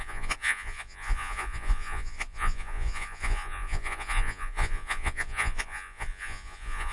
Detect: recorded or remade remade